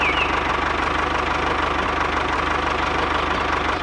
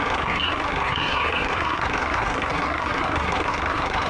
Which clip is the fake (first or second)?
second